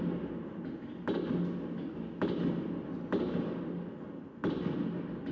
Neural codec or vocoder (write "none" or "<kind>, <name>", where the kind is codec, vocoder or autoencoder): none